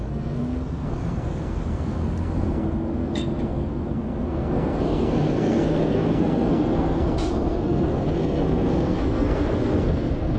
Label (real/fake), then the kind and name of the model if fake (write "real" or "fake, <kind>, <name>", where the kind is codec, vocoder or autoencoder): fake, codec, SNAC